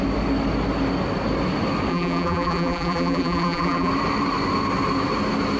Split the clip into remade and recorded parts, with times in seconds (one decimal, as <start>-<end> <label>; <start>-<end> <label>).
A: 0.0-1.9 recorded; 1.9-3.9 remade; 3.9-5.6 recorded